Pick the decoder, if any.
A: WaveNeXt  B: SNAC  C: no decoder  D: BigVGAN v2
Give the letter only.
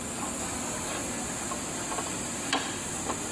C